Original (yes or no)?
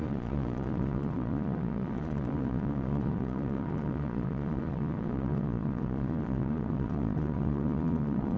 no